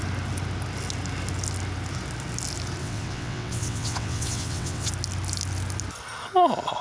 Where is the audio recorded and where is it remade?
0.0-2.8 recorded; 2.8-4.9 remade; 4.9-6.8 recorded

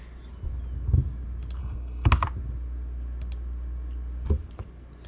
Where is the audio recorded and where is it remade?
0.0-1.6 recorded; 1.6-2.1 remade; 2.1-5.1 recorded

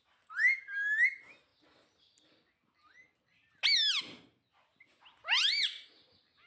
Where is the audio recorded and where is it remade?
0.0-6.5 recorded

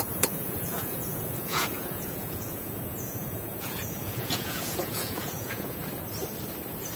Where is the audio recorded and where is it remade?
0.0-5.8 remade; 5.8-7.0 recorded

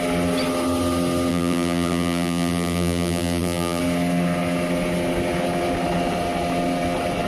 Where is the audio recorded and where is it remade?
0.0-1.3 recorded; 1.3-3.8 remade; 3.8-7.3 recorded

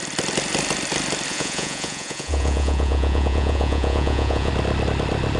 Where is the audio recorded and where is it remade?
0.0-1.3 recorded; 1.3-4.5 remade; 4.5-5.4 recorded